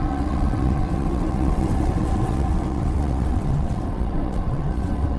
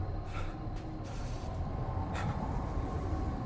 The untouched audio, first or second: second